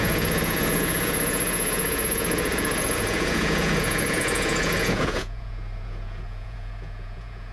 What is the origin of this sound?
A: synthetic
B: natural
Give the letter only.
A